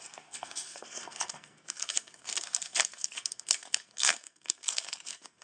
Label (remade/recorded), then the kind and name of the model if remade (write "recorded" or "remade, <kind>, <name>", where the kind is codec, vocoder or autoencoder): remade, codec, SNAC